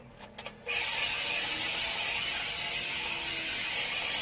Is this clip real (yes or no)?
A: yes